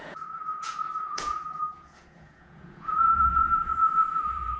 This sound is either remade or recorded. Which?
remade